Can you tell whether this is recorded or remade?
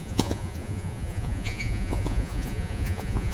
remade